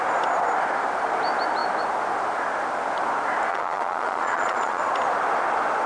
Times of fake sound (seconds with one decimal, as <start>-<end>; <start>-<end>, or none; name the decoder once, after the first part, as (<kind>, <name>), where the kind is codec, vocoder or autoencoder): 3.5-4.8 (vocoder, Vocos)